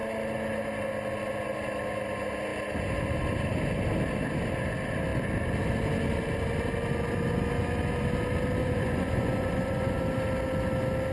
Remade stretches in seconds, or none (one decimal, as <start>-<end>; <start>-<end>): 8.6-10.0